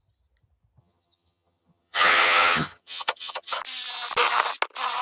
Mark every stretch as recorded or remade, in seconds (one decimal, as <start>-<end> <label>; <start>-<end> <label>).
0.0-0.8 recorded; 0.8-3.6 remade; 3.6-5.0 recorded